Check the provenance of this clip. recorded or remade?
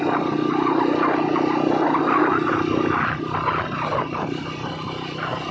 recorded